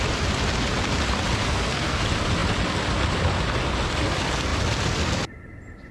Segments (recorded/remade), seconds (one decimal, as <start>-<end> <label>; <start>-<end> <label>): 0.0-1.4 recorded; 1.4-2.0 remade; 2.0-5.9 recorded